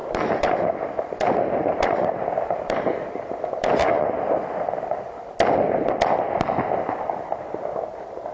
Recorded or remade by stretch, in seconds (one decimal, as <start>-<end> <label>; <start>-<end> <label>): 0.0-4.1 remade; 4.1-8.3 recorded